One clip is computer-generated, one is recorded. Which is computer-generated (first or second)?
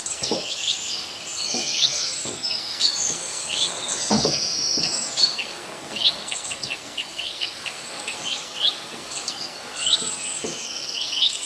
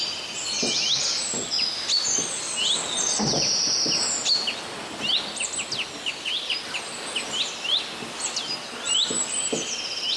first